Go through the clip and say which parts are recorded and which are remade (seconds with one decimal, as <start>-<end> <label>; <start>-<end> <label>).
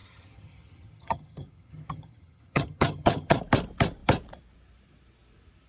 0.0-3.4 remade; 3.4-5.7 recorded